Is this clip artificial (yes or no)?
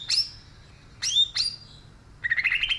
no